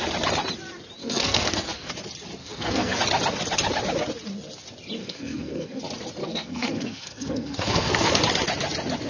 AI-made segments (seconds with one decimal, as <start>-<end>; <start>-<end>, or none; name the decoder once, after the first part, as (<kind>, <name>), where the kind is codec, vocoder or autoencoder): 1.0-1.9 (codec, SNAC); 2.4-3.0; 5.0-5.8; 6.2-8.2